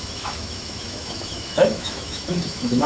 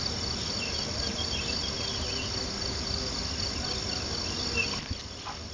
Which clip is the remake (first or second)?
first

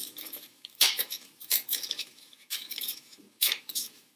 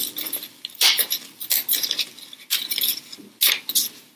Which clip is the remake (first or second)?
first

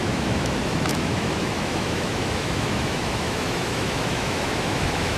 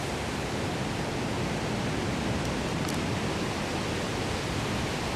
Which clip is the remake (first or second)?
first